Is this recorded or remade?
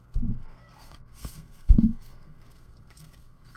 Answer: remade